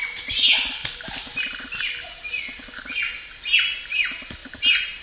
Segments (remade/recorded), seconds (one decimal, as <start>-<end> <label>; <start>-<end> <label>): 0.0-5.0 recorded

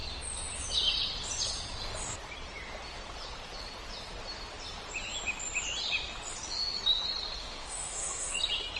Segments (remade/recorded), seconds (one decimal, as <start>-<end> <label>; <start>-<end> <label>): 0.0-7.4 recorded; 7.4-8.4 remade; 8.4-8.8 recorded

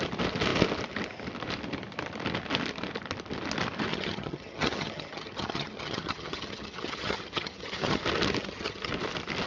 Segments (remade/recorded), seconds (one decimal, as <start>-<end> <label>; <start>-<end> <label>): 0.0-3.9 recorded; 3.9-8.0 remade; 8.0-8.4 recorded; 8.4-8.9 remade; 8.9-9.5 recorded

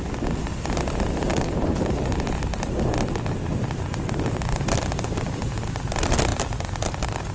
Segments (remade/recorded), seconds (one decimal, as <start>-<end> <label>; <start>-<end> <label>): 0.0-1.3 recorded; 1.3-2.7 remade; 2.7-7.3 recorded

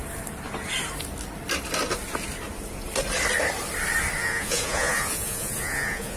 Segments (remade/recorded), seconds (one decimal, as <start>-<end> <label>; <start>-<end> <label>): 0.0-4.2 recorded; 4.2-6.2 remade